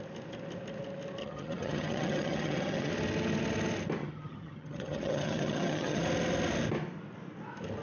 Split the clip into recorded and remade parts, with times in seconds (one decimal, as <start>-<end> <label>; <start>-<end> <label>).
0.0-1.2 recorded; 1.2-2.9 remade; 2.9-4.0 recorded; 4.0-6.0 remade; 6.0-7.8 recorded